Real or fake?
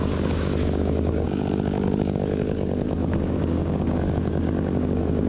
fake